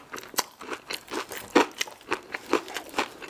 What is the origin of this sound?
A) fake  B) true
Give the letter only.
B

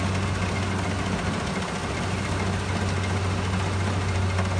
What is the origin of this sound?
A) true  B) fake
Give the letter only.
A